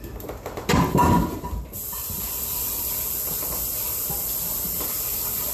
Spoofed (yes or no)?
yes